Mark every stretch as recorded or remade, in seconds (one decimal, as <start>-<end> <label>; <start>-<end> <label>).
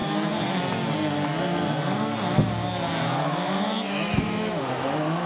0.0-3.2 recorded; 3.2-5.3 remade